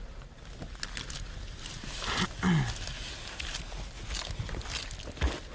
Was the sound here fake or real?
real